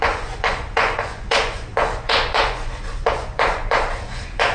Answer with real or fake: fake